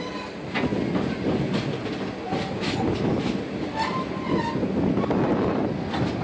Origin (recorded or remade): recorded